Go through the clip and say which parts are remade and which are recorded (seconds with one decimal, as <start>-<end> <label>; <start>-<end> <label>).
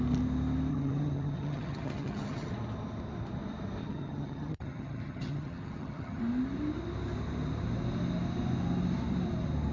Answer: 0.0-0.7 recorded; 0.7-2.5 remade; 2.5-3.8 recorded; 3.8-6.2 remade; 6.2-9.7 recorded